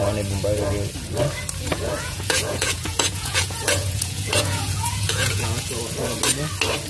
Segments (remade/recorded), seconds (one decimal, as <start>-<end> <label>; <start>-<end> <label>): 0.0-1.7 recorded; 1.7-5.8 remade; 5.8-6.9 recorded